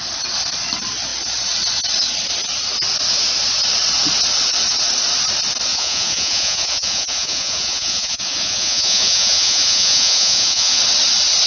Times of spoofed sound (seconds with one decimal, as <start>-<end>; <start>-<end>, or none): 5.7-10.8

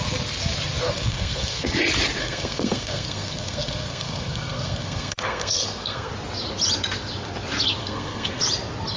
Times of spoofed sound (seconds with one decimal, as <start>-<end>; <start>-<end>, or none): 0.8-1.7; 2.2-6.1; 7.8-8.4

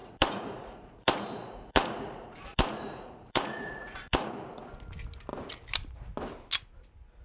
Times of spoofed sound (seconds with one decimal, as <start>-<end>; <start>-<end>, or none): 0.0-4.3

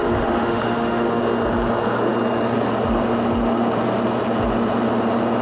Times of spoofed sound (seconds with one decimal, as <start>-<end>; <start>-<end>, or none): 0.0-1.2

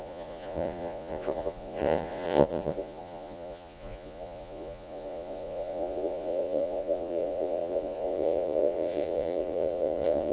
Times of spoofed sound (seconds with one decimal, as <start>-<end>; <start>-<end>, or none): 0.0-10.3

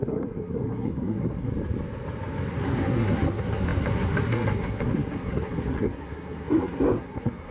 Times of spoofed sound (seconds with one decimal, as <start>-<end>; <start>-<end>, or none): 0.0-1.5; 2.5-7.5

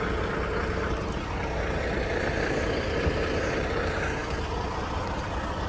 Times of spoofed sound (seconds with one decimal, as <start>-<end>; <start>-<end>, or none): none